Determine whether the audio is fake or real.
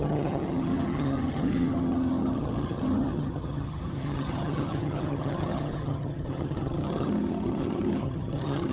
fake